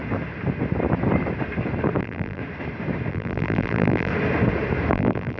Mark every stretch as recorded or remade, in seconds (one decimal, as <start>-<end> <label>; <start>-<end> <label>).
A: 0.0-2.0 recorded; 2.0-2.4 remade; 2.4-3.1 recorded; 3.1-4.1 remade; 4.1-4.9 recorded; 4.9-5.4 remade